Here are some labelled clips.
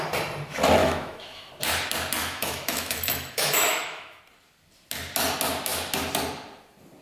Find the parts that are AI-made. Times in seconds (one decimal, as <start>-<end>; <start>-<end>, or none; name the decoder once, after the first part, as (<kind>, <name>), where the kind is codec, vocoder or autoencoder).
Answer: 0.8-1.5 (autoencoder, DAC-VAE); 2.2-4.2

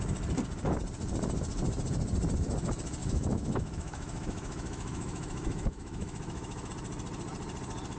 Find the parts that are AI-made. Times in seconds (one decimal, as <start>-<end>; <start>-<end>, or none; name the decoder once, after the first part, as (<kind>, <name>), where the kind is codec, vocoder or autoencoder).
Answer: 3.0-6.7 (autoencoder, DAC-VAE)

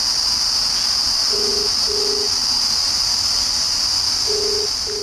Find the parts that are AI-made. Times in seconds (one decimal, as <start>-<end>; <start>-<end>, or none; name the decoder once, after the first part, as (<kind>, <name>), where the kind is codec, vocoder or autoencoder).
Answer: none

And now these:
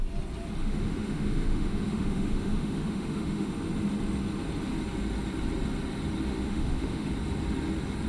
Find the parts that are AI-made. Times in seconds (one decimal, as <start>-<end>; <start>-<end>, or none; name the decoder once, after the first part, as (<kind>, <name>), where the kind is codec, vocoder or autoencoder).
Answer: 0.6-3.5 (autoencoder, DAC-VAE); 6.3-7.1

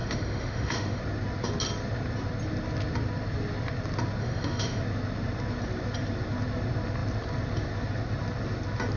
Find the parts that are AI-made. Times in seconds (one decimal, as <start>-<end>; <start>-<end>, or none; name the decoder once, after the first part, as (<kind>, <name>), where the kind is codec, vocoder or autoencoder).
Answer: 0.0-1.0 (autoencoder, DAC-VAE); 4.2-4.8

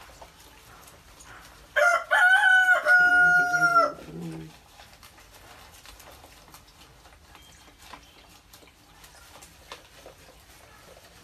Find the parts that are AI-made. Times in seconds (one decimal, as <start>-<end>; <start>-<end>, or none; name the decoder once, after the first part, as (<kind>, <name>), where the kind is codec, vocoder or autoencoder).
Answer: none

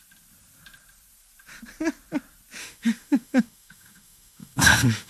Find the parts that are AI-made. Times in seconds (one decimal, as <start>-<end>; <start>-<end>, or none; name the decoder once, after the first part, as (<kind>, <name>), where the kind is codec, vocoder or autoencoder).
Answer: 2.6-5.1 (autoencoder, DAC-VAE)

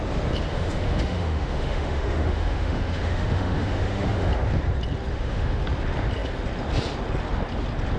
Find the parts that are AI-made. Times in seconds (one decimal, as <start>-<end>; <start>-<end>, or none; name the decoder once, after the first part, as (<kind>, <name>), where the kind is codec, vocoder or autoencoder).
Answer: 0.5-4.3 (autoencoder, DAC-VAE); 5.1-5.6